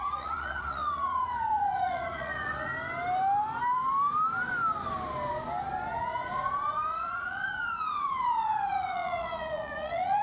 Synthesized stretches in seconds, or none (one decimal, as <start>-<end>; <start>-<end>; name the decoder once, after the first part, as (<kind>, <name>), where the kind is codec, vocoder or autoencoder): 0.0-2.7 (vocoder, Vocos); 5.9-10.2